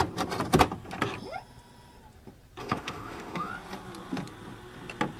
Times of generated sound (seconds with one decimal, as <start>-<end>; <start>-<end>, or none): 2.6-3.5